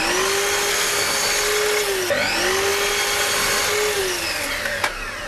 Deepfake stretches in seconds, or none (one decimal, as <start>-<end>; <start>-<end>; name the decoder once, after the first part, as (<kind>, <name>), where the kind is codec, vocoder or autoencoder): 0.7-1.2 (codec, SNAC)